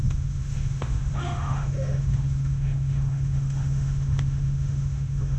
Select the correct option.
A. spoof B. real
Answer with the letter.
A